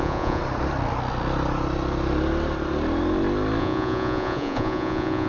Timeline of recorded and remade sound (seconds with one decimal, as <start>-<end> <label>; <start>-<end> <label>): 0.0-0.4 remade; 0.4-3.6 recorded; 3.6-5.3 remade

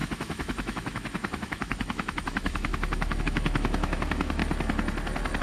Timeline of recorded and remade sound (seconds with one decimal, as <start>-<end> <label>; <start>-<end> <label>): 0.0-4.4 remade; 4.4-5.4 recorded